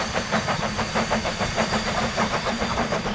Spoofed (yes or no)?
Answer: yes